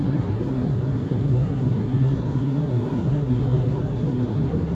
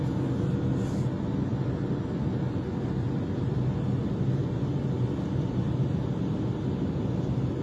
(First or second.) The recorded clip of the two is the second